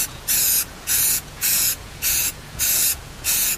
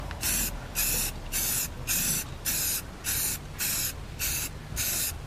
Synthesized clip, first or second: first